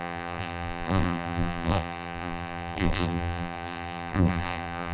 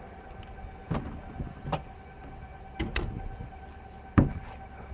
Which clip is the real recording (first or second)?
second